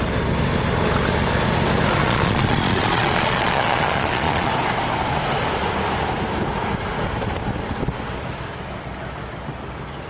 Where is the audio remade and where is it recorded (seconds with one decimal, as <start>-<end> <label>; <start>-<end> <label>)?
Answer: 0.0-2.0 recorded; 2.0-4.5 remade; 4.5-10.1 recorded